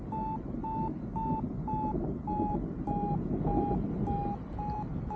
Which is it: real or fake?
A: real